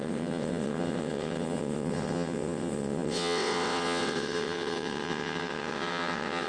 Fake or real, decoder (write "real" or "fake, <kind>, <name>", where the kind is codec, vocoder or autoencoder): fake, vocoder, WaveNeXt